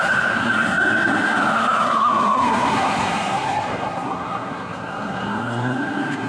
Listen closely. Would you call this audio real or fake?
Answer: fake